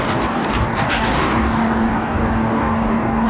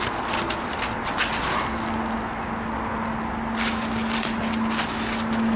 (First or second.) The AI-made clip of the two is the first